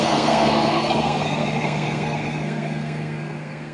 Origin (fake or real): fake